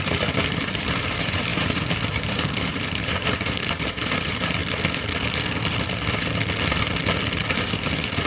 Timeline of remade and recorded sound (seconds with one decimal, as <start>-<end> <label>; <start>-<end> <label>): 0.0-4.6 remade; 4.6-7.5 recorded; 7.5-8.3 remade